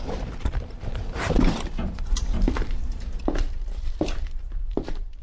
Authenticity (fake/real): fake